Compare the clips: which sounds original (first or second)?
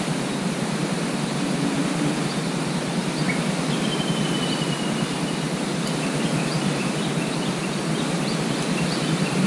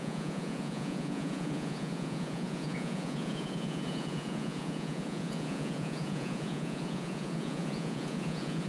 first